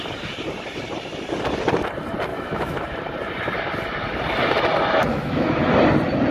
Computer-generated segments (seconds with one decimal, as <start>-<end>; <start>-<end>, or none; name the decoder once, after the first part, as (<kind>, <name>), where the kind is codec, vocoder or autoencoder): 2.3-2.8 (autoencoder, DAC-VAE); 5.0-5.6